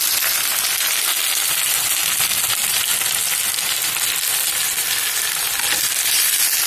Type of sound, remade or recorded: recorded